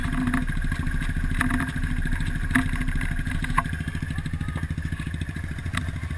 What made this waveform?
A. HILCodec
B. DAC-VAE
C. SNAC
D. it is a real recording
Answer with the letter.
D